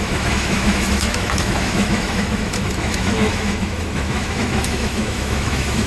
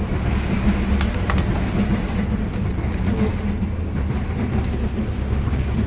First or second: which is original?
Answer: second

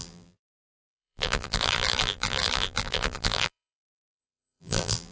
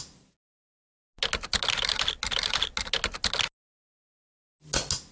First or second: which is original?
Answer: second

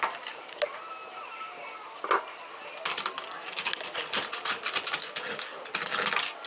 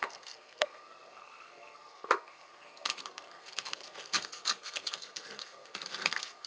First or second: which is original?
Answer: first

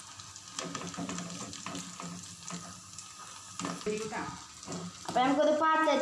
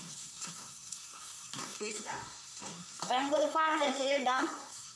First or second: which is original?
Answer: first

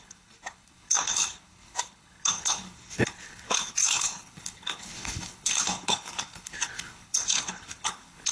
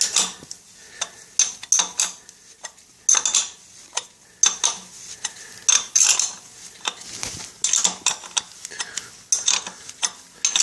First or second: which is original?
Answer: second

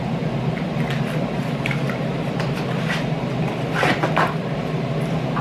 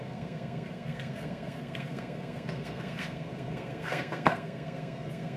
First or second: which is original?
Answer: first